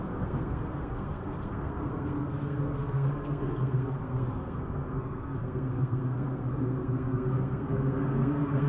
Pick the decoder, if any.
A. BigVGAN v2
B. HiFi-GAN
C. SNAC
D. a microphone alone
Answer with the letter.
C